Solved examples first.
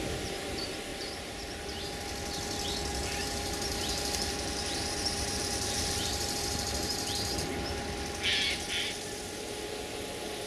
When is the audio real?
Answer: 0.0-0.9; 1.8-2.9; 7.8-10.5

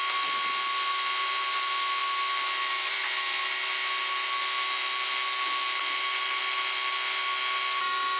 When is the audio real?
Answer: 0.0-8.2

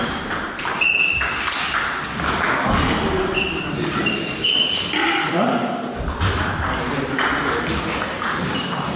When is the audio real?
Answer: 0.0-9.0

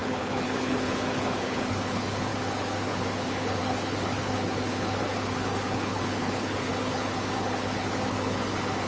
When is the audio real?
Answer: none

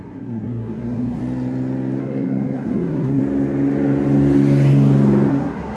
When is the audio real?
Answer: 1.2-2.0; 3.2-5.3

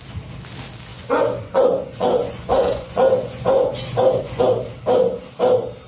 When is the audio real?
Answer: 0.0-0.9; 4.4-5.9

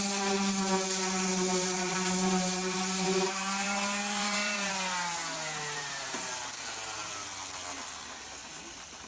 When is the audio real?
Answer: 0.0-1.3; 6.3-9.1